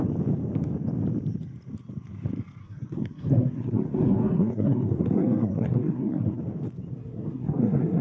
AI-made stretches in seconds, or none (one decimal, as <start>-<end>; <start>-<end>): 2.6-6.4; 6.9-8.0